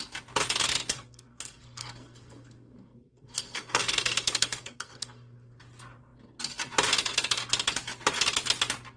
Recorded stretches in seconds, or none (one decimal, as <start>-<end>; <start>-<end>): 0.0-0.9; 5.6-9.0